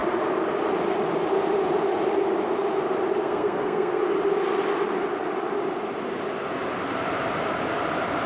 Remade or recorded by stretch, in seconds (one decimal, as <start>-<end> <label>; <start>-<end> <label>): 0.0-3.2 recorded; 3.2-4.0 remade; 4.0-8.3 recorded